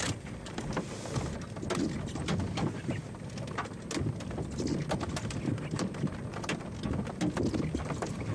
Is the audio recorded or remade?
recorded